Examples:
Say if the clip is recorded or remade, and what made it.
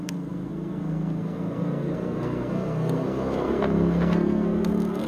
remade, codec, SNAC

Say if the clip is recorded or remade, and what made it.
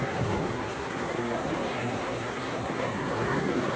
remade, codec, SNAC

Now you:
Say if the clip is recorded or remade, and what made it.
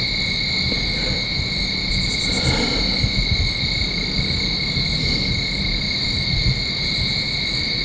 recorded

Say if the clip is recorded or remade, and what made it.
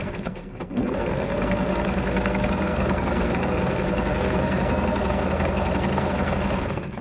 remade, codec, SNAC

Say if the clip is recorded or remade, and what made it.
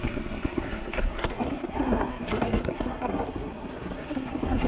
remade, codec, SNAC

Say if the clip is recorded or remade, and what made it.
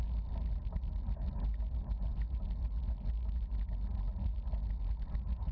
recorded